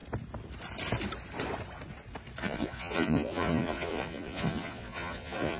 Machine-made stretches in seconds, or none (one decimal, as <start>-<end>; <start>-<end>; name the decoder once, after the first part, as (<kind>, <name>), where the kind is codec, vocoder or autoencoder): 2.4-5.6 (vocoder, Vocos)

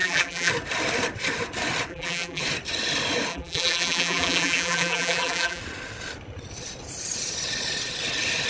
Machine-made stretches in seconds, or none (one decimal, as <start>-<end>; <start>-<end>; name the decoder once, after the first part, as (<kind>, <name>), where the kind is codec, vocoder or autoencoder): 0.0-0.5 (vocoder, BigVGAN v2); 1.9-2.4; 3.3-5.6

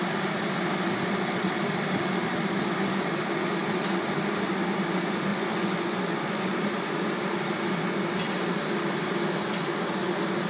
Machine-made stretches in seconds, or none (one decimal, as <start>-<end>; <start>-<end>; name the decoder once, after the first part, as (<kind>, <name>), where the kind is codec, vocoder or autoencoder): 5.3-6.4 (vocoder, Vocos)

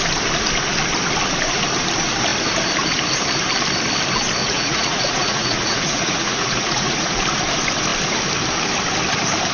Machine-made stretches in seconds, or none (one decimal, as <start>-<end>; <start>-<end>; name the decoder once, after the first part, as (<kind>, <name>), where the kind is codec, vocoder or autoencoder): 4.4-7.2 (vocoder, Vocos)

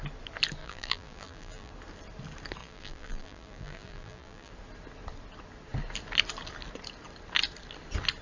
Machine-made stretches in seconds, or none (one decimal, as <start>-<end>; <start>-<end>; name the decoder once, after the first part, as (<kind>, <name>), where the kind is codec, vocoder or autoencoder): 0.6-1.7 (vocoder, BigVGAN v2); 2.6-4.5

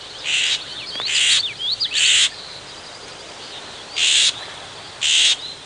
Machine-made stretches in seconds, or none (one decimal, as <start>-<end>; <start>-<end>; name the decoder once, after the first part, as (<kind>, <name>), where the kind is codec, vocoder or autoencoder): 0.0-0.7 (vocoder, BigVGAN v2); 1.7-5.7